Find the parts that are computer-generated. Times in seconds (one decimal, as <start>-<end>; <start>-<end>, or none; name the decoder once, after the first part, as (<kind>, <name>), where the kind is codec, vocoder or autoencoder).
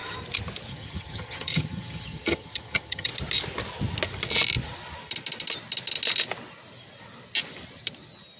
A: 0.7-3.1 (vocoder, HiFi-GAN)